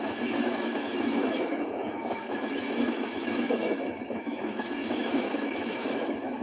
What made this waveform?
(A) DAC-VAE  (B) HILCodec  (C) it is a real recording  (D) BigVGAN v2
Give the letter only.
A